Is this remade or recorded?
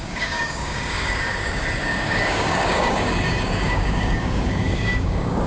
remade